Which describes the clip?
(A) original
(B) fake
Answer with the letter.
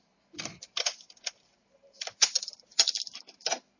B